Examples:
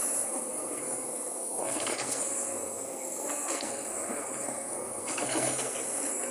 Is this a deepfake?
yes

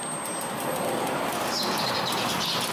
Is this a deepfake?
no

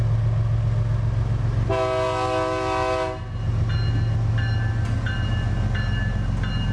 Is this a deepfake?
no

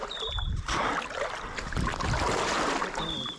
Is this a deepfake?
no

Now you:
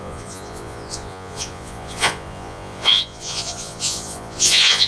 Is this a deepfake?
yes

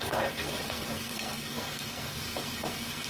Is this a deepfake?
yes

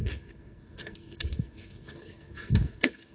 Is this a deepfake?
yes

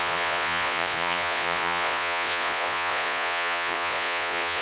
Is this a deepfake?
yes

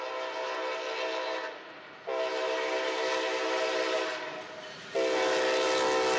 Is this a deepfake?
no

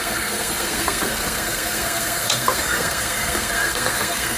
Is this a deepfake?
yes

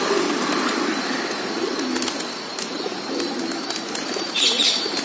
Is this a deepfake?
no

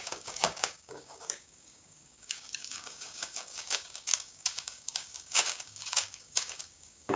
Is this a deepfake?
yes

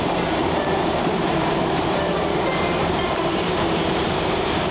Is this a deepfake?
yes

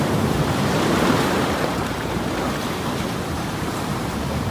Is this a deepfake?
yes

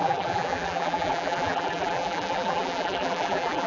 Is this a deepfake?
yes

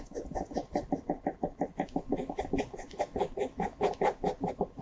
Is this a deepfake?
no